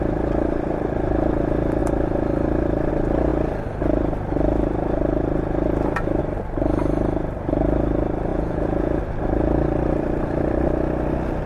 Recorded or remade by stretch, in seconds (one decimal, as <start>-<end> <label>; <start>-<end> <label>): 0.0-8.3 recorded; 8.3-9.0 remade; 9.0-11.5 recorded